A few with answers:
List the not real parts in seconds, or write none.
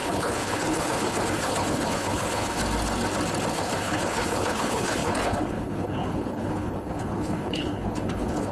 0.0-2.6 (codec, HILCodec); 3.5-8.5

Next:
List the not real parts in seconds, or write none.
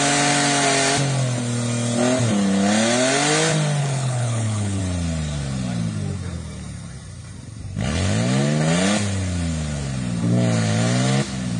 3.8-4.8 (codec, HILCodec)